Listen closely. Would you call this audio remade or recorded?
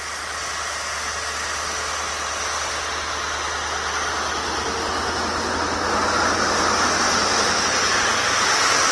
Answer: recorded